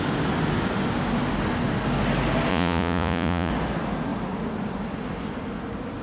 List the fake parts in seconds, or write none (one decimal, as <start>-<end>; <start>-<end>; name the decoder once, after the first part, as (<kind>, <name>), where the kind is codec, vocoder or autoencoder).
2.5-3.5 (vocoder, Vocos)